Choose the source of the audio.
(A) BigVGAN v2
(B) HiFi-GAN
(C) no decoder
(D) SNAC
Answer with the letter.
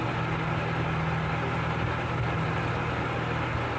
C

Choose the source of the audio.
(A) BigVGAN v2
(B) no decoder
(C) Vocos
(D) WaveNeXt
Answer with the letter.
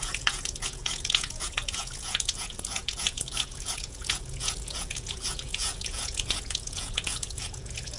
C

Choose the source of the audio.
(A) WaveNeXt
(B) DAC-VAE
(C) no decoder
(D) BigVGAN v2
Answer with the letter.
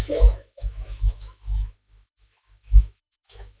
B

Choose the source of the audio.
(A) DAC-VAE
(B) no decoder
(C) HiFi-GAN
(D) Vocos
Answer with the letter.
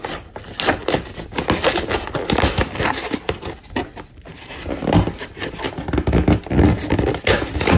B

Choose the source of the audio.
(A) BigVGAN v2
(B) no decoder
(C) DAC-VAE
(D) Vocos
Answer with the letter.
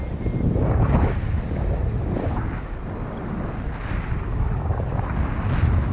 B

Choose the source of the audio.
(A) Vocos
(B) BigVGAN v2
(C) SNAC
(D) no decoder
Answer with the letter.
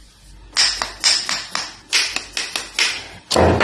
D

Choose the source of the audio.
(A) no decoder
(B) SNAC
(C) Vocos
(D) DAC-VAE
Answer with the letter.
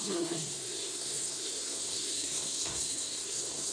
B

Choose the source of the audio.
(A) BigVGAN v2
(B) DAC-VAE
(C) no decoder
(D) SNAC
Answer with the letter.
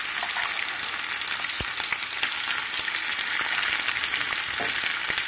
C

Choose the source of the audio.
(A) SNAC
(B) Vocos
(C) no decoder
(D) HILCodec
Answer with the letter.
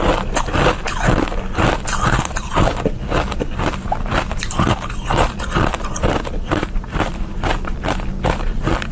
C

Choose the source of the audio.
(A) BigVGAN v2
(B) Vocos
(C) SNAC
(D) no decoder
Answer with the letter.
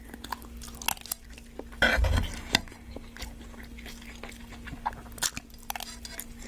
D